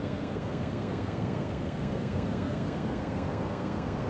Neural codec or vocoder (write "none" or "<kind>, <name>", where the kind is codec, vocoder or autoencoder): codec, SNAC